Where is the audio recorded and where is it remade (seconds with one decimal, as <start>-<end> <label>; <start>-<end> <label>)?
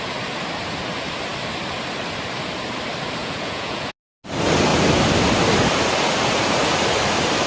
0.0-3.2 recorded; 3.2-3.9 remade; 3.9-7.5 recorded